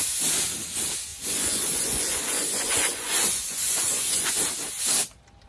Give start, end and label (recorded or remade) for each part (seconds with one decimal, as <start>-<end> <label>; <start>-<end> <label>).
0.0-1.1 recorded; 1.1-4.4 remade; 4.4-5.5 recorded